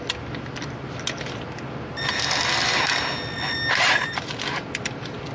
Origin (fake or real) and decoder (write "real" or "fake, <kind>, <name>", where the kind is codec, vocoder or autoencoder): real